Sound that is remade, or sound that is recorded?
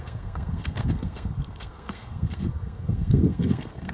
remade